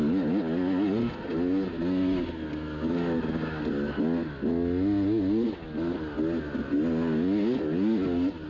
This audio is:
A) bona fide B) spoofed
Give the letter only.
A